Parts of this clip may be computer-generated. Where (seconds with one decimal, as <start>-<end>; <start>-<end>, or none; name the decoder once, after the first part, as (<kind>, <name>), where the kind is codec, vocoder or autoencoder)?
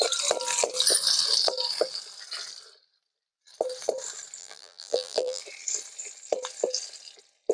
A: 4.4-5.4 (vocoder, BigVGAN v2)